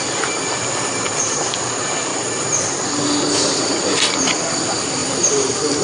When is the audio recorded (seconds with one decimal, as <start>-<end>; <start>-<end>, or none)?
0.0-5.8